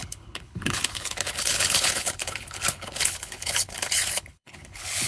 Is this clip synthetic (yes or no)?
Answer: yes